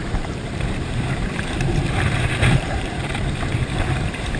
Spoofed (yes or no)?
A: yes